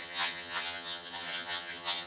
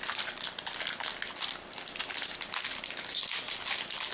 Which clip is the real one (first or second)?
second